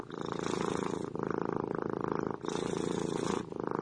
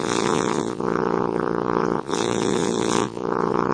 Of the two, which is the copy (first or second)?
second